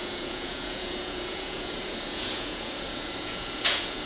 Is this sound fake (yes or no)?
yes